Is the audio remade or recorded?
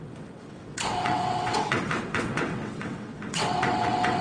remade